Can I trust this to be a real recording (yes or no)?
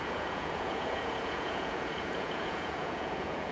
no